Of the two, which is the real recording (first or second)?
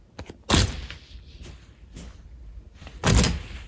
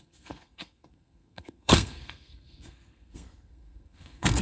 first